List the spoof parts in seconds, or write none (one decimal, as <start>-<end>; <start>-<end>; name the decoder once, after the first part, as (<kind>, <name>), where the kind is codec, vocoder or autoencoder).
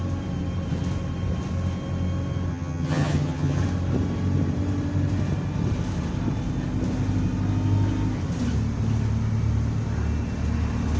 2.5-3.6 (vocoder, HiFi-GAN)